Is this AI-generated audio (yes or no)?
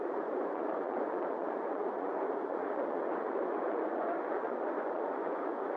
yes